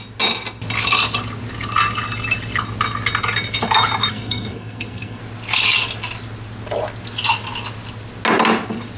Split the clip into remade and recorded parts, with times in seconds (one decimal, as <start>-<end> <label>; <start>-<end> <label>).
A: 0.0-4.1 recorded; 4.1-5.2 remade; 5.2-9.0 recorded